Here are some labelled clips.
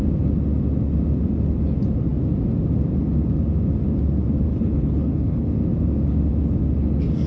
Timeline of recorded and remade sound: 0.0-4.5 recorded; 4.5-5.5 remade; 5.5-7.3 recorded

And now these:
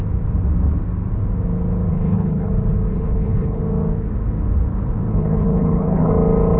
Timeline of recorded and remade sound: 0.0-1.9 recorded; 1.9-2.5 remade; 2.5-2.9 recorded; 2.9-3.6 remade; 3.6-5.1 recorded; 5.1-6.1 remade; 6.1-6.6 recorded

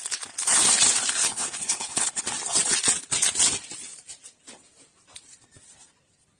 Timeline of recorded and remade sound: 0.0-1.2 recorded; 1.2-2.2 remade; 2.2-6.4 recorded

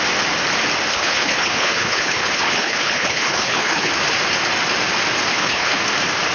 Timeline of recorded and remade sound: 0.0-0.9 recorded; 0.9-3.9 remade; 3.9-5.3 recorded; 5.3-5.8 remade; 5.8-6.3 recorded

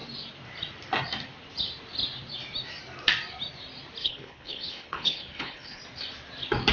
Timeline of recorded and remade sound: 0.0-4.0 recorded; 4.0-5.8 remade; 5.8-6.7 recorded

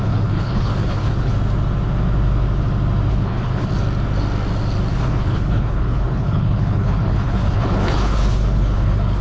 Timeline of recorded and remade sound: 0.0-1.3 remade; 1.3-3.1 recorded; 3.1-3.7 remade; 3.7-4.9 recorded; 4.9-9.2 remade